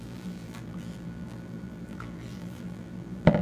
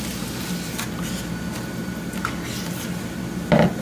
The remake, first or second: first